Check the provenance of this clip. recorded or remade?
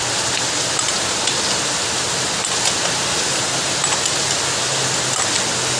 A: recorded